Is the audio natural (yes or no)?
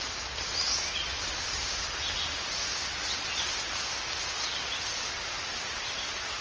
yes